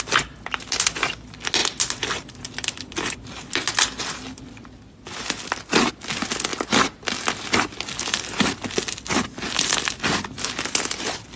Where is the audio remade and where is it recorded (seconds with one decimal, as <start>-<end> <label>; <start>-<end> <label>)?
0.0-11.4 recorded